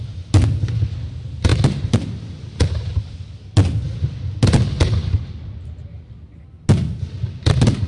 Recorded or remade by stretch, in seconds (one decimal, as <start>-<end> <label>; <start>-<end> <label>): 0.0-7.9 recorded